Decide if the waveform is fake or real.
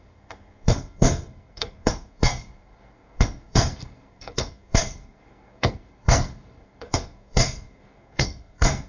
fake